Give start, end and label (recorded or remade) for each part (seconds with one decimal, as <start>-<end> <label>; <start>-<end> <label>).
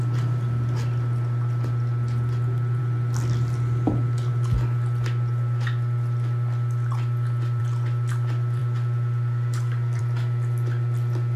0.0-11.4 recorded